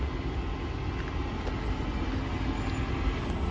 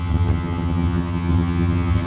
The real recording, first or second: first